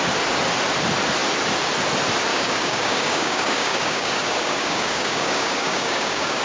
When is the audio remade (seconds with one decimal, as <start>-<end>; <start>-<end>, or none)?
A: 2.3-6.4

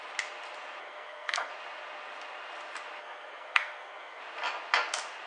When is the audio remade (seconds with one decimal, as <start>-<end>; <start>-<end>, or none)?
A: 0.8-1.5; 3.0-4.2